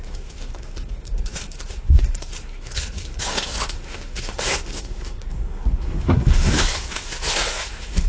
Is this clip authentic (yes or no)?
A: no